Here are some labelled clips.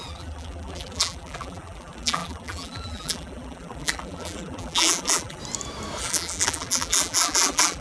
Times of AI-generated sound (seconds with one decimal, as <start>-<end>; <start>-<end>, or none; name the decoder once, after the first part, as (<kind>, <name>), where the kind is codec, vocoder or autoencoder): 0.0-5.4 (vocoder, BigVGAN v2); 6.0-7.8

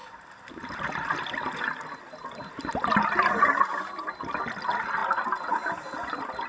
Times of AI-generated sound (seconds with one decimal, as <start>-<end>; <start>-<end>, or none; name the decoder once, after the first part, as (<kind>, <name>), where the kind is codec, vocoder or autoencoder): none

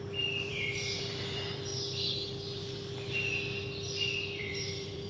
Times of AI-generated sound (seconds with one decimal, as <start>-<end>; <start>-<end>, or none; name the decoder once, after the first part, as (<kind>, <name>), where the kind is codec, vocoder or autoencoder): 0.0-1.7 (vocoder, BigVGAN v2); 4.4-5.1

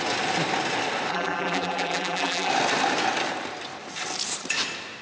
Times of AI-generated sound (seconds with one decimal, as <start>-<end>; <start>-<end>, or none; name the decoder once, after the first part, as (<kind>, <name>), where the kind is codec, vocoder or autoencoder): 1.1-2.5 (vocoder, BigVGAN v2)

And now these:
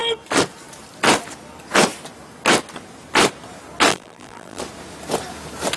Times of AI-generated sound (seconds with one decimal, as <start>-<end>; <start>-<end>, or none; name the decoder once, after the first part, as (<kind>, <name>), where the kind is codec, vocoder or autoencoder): 3.9-4.6 (vocoder, BigVGAN v2)

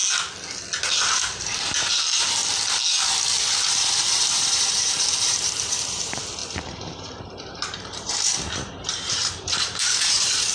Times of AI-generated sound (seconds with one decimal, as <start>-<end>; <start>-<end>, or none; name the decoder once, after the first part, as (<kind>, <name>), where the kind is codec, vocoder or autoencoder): 0.8-2.4 (vocoder, BigVGAN v2); 3.7-10.5

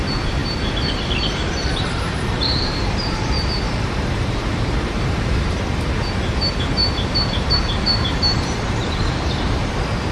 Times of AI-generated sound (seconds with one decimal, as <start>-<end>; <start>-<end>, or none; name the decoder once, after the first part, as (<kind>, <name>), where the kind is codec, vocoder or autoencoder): 0.4-5.6 (vocoder, BigVGAN v2); 6.8-9.7